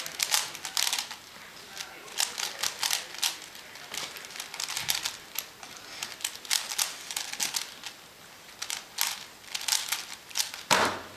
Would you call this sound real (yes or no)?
yes